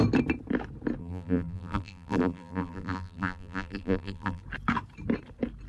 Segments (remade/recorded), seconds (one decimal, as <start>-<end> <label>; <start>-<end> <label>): 0.0-1.0 recorded; 1.0-4.4 remade; 4.4-5.7 recorded